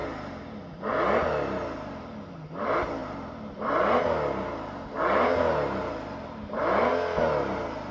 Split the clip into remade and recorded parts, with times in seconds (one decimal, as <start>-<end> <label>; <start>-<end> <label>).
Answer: 0.0-0.6 remade; 0.6-3.0 recorded; 3.0-3.6 remade; 3.6-7.9 recorded